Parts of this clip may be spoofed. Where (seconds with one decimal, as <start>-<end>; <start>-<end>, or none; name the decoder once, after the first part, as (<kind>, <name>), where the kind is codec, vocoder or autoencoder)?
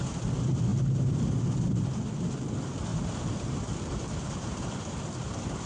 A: 0.7-1.3 (vocoder, BigVGAN v2); 2.9-4.8